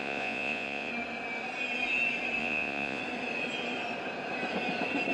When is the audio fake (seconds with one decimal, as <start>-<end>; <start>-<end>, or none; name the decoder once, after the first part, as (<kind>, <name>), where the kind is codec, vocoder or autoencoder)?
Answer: 0.0-0.9 (vocoder, Vocos); 2.4-3.0